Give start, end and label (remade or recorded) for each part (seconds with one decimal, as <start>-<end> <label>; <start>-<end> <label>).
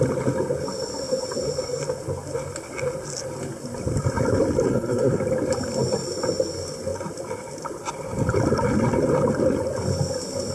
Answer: 0.0-4.7 recorded; 4.7-5.2 remade; 5.2-10.5 recorded